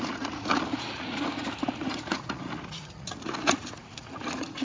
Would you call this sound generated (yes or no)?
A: yes